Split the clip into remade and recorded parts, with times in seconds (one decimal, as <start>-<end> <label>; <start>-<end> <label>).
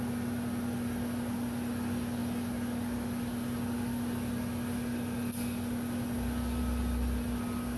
0.0-7.8 recorded